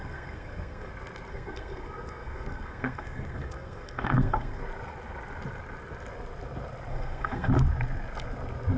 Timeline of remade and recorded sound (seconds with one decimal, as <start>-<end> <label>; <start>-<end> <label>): 0.0-0.9 remade; 0.9-1.3 recorded; 1.3-4.6 remade; 4.6-6.9 recorded; 6.9-7.5 remade; 7.5-8.8 recorded